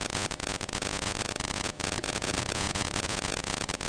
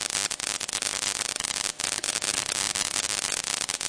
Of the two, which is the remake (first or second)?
first